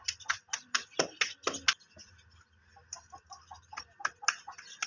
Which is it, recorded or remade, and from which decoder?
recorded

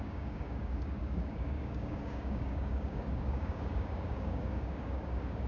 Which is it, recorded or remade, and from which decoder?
remade, codec, DAC